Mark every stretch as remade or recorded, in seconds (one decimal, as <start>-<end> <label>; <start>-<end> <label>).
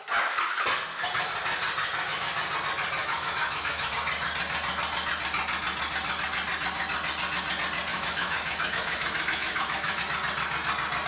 0.0-3.0 recorded; 3.0-3.9 remade; 3.9-7.9 recorded; 7.9-10.0 remade; 10.0-11.1 recorded